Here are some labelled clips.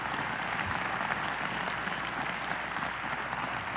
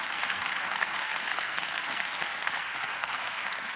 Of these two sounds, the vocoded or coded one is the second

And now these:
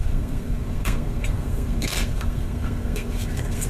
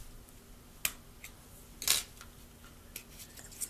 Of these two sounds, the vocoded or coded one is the first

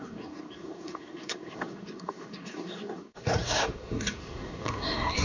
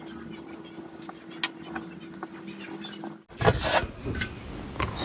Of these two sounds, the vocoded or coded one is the first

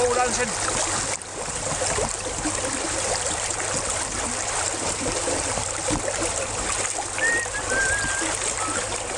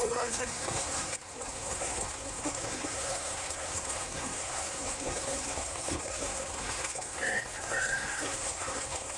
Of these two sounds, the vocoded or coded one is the second